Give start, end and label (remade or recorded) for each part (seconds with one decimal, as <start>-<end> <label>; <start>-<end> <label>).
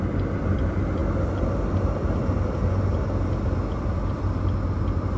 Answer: 0.0-5.2 recorded